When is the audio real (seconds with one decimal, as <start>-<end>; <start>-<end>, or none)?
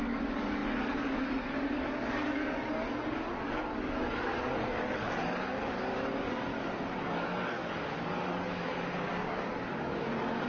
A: 6.5-7.0